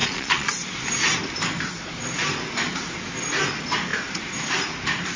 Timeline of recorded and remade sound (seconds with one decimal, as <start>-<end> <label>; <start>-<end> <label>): 0.0-0.5 remade; 0.5-5.2 recorded